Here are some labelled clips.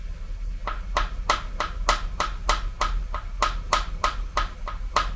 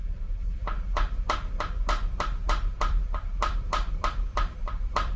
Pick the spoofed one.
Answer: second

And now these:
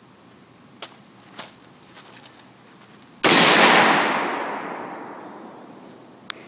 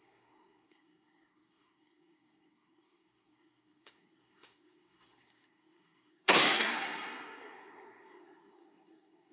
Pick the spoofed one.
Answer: second